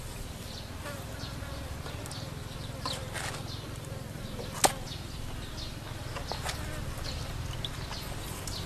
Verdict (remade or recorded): recorded